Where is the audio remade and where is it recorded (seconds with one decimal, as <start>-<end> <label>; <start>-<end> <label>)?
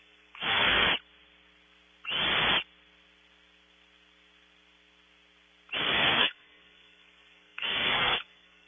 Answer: 0.0-0.9 remade; 0.9-5.8 recorded; 5.8-8.7 remade